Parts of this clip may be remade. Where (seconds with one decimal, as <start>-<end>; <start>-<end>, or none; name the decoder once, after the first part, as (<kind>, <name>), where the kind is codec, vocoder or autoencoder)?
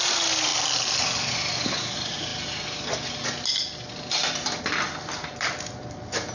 0.5-1.5 (vocoder, BigVGAN v2); 4.2-5.7